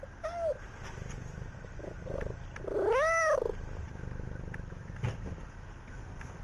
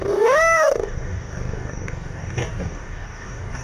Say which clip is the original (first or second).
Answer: first